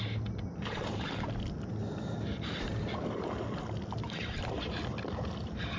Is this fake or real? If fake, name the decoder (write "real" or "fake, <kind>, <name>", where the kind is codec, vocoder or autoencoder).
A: real